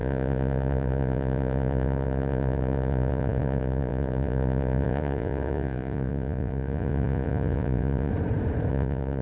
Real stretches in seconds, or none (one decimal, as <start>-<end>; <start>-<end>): 8.1-8.7